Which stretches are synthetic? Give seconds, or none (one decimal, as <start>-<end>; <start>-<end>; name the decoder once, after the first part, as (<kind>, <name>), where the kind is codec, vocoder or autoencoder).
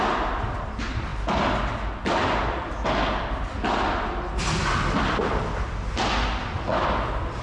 none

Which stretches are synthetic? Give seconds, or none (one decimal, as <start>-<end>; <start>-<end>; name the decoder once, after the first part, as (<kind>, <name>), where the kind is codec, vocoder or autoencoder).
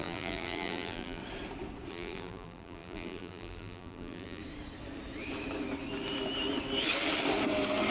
0.0-1.2 (vocoder, BigVGAN v2); 1.9-4.4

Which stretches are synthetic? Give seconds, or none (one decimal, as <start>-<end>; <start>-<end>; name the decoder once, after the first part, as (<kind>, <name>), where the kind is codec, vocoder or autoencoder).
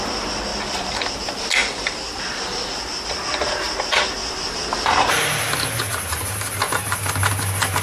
0.5-1.2 (vocoder, BigVGAN v2); 1.6-2.3; 4.2-5.1